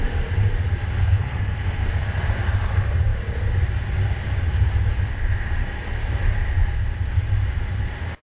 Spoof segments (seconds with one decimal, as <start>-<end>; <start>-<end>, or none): 1.0-1.9